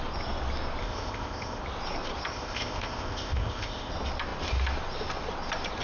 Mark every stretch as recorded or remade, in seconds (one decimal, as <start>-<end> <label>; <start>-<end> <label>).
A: 0.0-0.8 recorded; 0.8-1.6 remade; 1.6-2.3 recorded; 2.3-3.9 remade; 3.9-5.8 recorded